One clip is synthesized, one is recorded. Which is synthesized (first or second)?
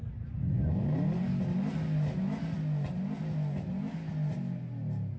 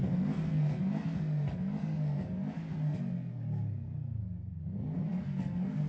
second